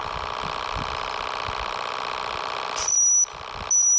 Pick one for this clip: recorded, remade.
recorded